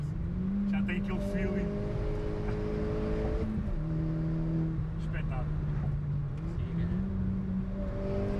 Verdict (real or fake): real